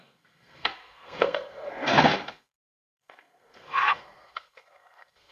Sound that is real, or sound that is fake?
fake